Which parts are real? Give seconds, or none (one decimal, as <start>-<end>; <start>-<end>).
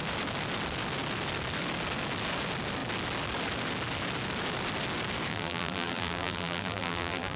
0.0-5.3